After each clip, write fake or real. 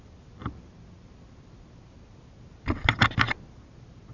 real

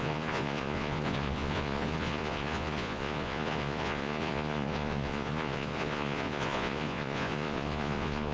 fake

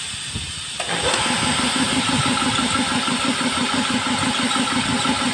real